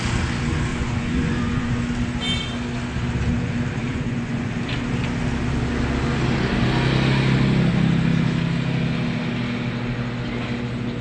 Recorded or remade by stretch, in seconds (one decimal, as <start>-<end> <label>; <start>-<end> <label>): 0.0-0.7 recorded; 0.7-1.8 remade; 1.8-3.8 recorded; 3.8-4.5 remade; 4.5-11.0 recorded